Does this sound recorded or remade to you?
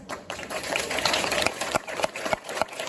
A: remade